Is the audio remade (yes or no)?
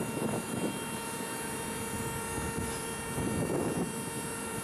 no